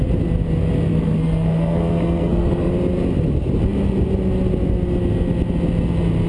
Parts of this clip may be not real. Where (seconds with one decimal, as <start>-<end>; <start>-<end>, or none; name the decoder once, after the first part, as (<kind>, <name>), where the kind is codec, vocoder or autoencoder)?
0.9-2.7 (codec, SNAC)